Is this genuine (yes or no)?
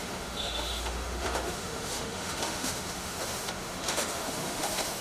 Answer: no